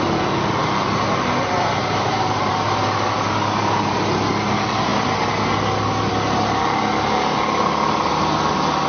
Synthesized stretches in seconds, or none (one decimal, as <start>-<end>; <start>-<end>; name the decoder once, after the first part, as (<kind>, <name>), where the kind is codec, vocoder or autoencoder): 1.8-2.5 (vocoder, BigVGAN v2)